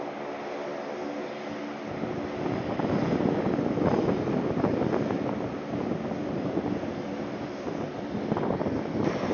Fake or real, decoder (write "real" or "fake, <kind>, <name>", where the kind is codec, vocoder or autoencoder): real